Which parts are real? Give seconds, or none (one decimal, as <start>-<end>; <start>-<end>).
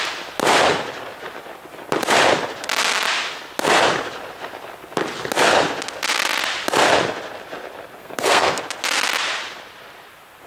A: 0.0-8.0; 8.6-10.5